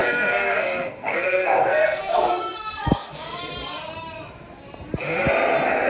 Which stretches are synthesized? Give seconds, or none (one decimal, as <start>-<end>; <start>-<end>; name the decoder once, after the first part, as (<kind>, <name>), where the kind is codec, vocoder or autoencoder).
0.0-3.5 (codec, SNAC)